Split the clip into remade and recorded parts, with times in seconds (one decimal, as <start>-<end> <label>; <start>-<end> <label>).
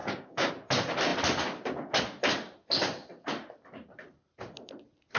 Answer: 0.0-0.5 remade; 0.5-5.2 recorded